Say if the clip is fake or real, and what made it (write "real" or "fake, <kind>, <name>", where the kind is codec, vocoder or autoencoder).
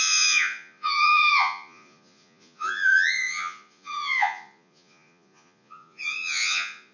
fake, vocoder, Vocos